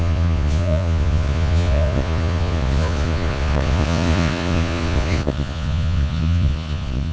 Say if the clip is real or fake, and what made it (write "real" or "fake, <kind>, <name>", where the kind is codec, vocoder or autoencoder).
fake, vocoder, Vocos